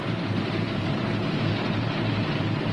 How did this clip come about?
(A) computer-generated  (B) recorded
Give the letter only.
A